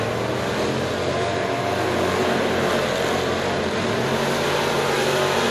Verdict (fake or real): real